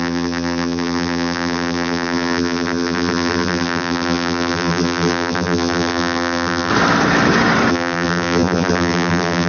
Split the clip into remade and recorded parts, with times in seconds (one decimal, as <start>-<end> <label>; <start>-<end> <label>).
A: 0.0-6.7 remade; 6.7-7.7 recorded; 7.7-9.5 remade

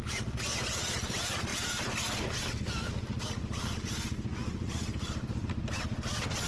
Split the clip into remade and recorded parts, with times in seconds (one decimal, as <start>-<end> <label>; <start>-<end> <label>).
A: 0.0-4.4 recorded; 4.4-5.7 remade; 5.7-6.5 recorded